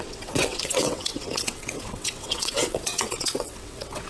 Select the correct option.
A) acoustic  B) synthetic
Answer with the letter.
B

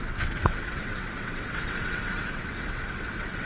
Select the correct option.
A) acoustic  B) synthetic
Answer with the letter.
B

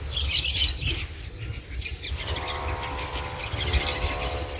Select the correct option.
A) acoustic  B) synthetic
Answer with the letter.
A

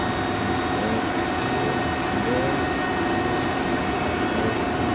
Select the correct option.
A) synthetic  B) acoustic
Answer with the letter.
B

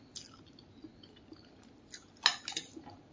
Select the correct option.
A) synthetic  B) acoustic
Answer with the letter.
B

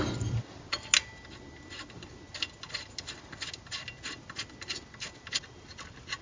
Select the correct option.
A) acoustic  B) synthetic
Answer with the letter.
A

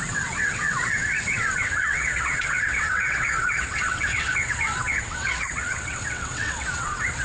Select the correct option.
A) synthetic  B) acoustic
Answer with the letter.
A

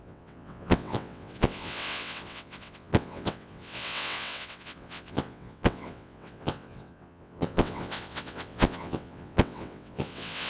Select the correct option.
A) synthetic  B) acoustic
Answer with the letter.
A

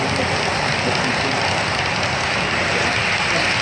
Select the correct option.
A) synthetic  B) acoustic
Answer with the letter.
B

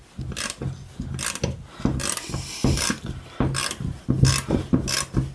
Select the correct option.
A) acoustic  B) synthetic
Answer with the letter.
A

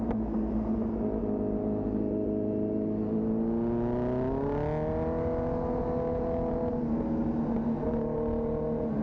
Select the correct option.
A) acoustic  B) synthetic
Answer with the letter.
A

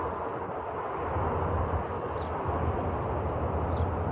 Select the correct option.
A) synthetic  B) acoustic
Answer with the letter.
B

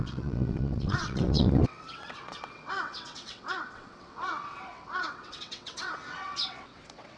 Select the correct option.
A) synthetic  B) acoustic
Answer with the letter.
A